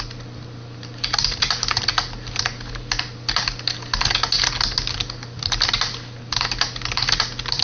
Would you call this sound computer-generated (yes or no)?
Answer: no